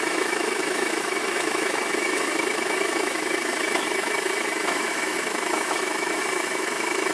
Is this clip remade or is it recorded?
remade